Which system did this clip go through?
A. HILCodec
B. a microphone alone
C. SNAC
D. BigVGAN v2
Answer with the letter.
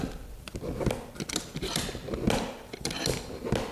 B